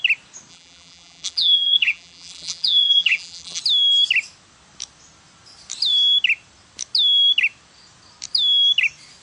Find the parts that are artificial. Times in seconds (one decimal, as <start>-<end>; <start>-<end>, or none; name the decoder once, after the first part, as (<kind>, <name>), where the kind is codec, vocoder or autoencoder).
0.5-3.6 (vocoder, BigVGAN v2)